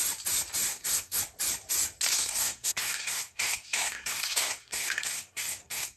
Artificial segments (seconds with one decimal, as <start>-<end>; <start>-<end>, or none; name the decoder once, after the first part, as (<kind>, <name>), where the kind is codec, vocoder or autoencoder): 0.7-1.2 (codec, SNAC); 2.1-6.0